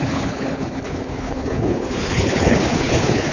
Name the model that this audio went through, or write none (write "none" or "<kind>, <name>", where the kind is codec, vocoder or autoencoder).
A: codec, HILCodec